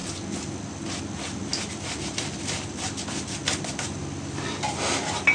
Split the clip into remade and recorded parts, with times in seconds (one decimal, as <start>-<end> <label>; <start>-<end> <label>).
0.0-5.3 recorded